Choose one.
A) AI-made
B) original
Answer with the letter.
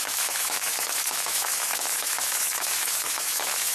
A